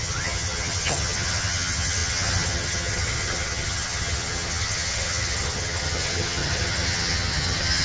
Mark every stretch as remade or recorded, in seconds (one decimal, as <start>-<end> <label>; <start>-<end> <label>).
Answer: 0.0-7.8 remade